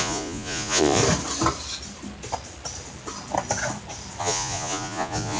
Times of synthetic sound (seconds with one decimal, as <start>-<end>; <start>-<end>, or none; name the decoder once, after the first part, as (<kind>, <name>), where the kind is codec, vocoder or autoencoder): 0.0-1.0 (vocoder, Vocos); 4.2-5.4

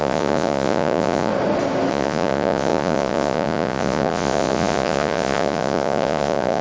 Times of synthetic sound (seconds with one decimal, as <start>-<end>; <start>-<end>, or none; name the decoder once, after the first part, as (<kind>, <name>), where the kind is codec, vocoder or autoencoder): 0.0-1.3 (vocoder, Vocos); 1.9-6.6

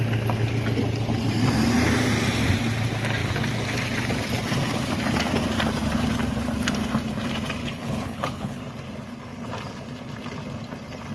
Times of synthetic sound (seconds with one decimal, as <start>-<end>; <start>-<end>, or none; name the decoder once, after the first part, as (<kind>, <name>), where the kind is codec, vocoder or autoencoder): 7.6-8.6 (codec, HILCodec)